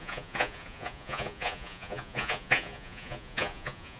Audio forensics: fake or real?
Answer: fake